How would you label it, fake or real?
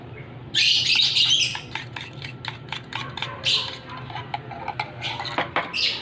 real